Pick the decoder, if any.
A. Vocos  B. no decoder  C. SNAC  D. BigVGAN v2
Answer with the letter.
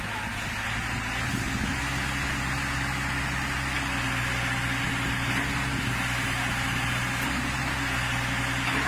B